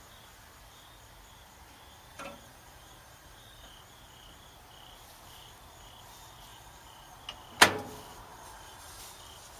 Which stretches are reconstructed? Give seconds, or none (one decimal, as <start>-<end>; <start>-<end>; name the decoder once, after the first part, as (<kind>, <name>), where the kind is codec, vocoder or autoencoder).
2.1-3.8 (vocoder, BigVGAN v2); 6.5-7.2; 8.3-9.0